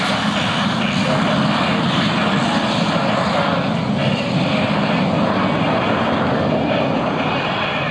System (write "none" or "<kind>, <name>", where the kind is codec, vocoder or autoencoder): none